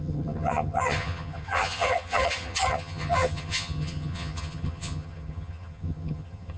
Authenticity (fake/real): fake